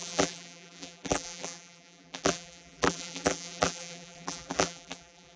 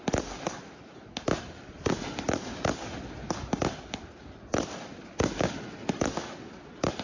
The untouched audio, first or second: second